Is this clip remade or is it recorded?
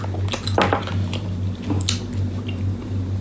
recorded